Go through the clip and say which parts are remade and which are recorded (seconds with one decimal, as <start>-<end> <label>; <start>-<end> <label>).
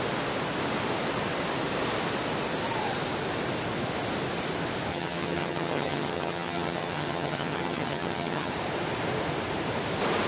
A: 0.0-4.9 recorded; 4.9-8.5 remade; 8.5-10.3 recorded